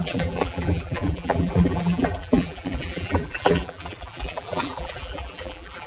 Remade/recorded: remade